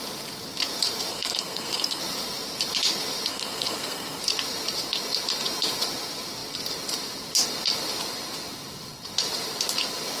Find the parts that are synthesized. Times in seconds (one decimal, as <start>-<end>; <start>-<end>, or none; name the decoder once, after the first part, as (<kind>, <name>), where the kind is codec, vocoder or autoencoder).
1.1-2.0 (codec, SNAC); 3.3-4.2